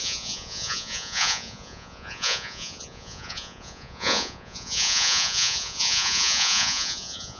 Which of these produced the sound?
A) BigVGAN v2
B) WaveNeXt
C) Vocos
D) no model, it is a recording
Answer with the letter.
C